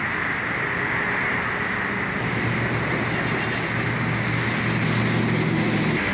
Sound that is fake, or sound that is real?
real